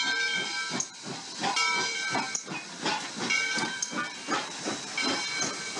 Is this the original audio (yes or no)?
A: no